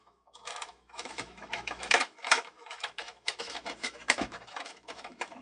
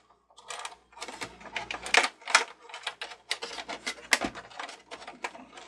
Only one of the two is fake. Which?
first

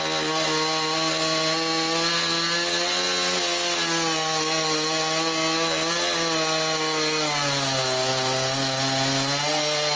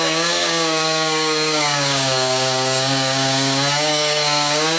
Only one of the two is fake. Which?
second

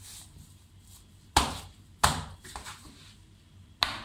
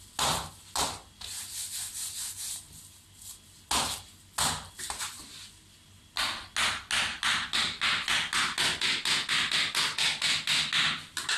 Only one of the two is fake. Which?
first